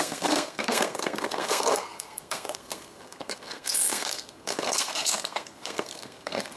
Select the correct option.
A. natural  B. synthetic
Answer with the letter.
B